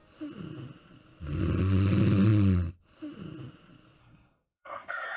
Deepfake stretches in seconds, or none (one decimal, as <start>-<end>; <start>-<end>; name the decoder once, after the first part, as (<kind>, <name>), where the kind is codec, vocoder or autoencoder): 4.0-5.2 (codec, SNAC)